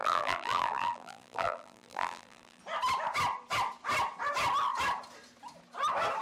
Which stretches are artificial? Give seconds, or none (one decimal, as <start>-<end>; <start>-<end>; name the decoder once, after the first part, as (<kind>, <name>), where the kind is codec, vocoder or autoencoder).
0.0-2.6 (vocoder, BigVGAN v2)

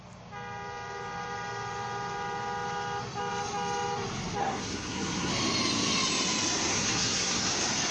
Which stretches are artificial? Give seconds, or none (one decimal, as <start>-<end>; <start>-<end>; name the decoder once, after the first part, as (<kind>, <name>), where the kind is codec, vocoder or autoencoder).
4.4-5.3 (codec, SNAC); 6.7-7.5

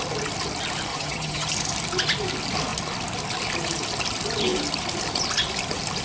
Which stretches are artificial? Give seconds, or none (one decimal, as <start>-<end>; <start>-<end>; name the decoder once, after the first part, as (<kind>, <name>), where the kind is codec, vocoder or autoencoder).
0.9-1.5 (vocoder, HiFi-GAN)

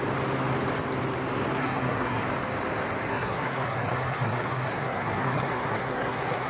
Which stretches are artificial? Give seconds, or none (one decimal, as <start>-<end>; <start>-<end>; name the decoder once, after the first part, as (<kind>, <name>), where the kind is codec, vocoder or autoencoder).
1.6-2.2 (codec, SNAC); 3.1-6.5

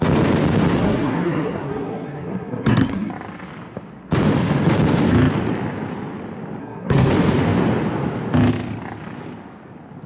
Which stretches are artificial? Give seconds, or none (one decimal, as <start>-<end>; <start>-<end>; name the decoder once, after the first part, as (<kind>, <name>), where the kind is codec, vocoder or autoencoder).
0.8-3.1 (codec, SNAC); 6.6-7.1

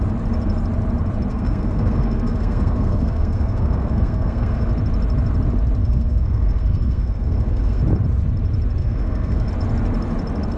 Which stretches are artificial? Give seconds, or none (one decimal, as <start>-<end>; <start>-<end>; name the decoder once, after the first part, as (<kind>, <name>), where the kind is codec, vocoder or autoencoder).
1.3-4.7 (codec, SNAC); 5.8-7.8; 8.8-9.5